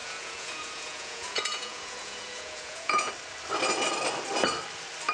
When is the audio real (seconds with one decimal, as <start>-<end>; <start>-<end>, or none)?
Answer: 3.1-5.1